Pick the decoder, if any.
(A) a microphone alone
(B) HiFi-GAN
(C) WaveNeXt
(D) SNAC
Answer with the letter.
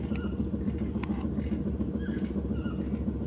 A